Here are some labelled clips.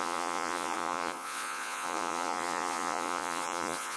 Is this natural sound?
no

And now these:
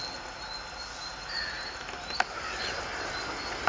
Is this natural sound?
yes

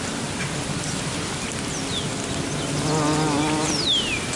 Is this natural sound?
yes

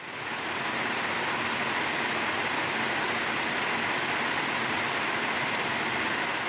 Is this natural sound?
yes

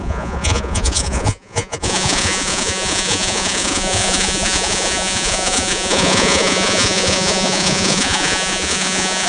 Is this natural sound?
no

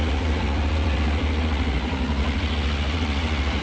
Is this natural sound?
no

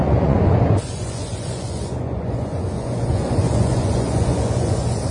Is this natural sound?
no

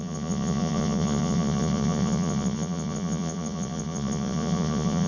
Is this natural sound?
no